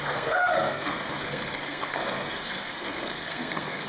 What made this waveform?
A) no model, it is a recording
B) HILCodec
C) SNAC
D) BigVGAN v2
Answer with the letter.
C